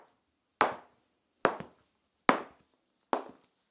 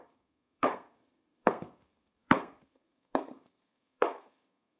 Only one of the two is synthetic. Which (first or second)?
second